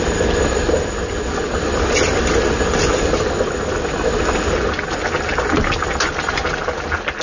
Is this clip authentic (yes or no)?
yes